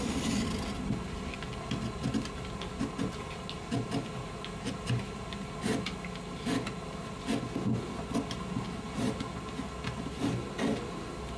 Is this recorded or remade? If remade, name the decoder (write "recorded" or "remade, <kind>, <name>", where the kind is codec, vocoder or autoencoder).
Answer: recorded